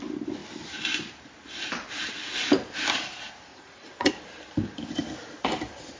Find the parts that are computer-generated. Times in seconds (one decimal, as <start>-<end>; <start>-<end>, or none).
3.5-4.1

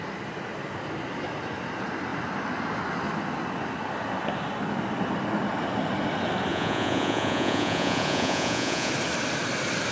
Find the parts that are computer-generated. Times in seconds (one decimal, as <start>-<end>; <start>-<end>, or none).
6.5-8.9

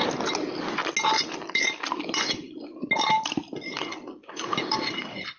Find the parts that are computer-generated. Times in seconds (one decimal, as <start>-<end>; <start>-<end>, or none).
4.2-4.8